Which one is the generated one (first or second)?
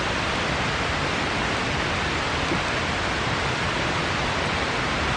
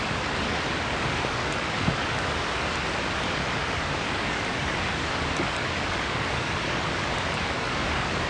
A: second